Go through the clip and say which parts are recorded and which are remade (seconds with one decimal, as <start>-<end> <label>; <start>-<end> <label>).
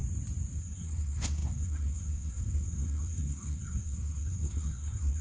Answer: 0.0-0.6 recorded; 0.6-5.2 remade